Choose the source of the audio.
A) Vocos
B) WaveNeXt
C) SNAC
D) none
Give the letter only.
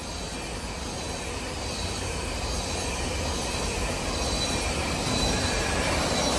D